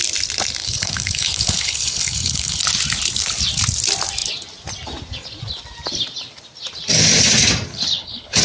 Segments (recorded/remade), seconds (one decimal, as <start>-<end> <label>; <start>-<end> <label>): 0.0-0.6 recorded; 0.6-2.6 remade; 2.6-7.7 recorded; 7.7-8.4 remade

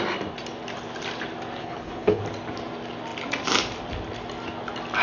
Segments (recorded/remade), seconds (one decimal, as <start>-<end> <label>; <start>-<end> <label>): 0.0-1.6 recorded; 1.6-2.2 remade; 2.2-5.0 recorded

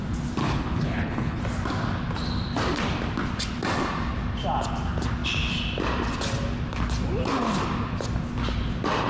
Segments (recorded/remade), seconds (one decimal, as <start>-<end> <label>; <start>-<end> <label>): 0.0-0.4 recorded; 0.4-1.4 remade; 1.4-9.1 recorded

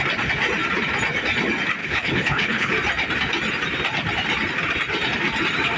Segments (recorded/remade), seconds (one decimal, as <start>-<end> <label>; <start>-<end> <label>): 0.0-1.8 recorded; 1.8-2.7 remade; 2.7-5.8 recorded